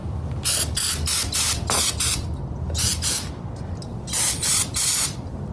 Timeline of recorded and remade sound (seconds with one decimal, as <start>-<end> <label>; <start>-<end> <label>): 0.0-5.5 recorded